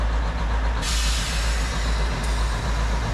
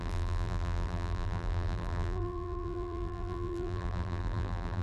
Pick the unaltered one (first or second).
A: first